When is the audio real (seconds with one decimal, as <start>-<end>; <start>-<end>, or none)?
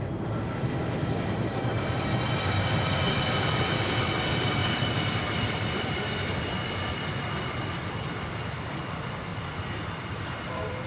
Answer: 0.0-1.7; 3.0-4.6; 8.8-9.3